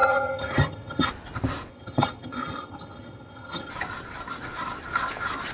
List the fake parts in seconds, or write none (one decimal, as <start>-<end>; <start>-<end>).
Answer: 0.0-1.1; 1.7-3.7